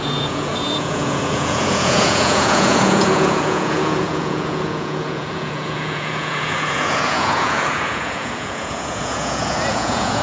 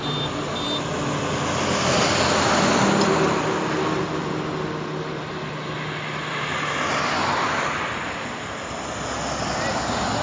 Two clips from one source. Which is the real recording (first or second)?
second